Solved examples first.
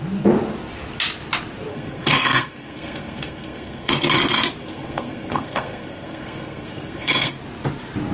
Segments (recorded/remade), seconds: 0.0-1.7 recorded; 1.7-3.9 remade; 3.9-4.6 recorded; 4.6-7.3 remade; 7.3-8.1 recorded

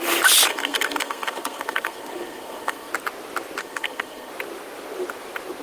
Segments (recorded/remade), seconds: 0.0-0.5 recorded; 0.5-2.9 remade; 2.9-3.6 recorded; 3.6-4.3 remade; 4.3-5.6 recorded